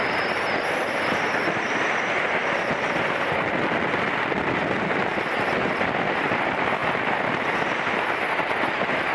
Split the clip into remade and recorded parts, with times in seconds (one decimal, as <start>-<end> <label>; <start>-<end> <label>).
0.0-9.1 recorded